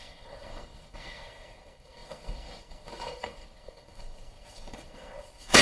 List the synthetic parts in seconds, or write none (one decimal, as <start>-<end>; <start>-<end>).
0.0-5.6